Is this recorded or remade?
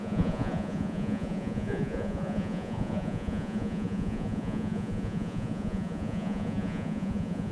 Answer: remade